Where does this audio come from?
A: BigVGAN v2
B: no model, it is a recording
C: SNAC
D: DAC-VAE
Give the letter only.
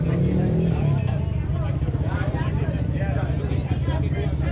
B